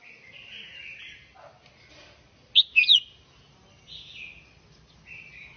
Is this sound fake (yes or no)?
no